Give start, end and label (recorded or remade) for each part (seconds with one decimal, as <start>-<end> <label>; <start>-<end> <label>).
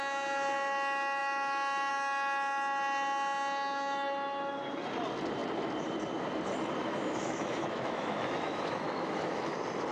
0.0-6.8 recorded; 6.8-9.5 remade; 9.5-9.9 recorded